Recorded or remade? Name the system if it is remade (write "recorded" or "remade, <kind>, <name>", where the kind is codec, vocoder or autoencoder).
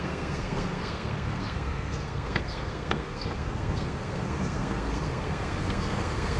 remade, codec, SNAC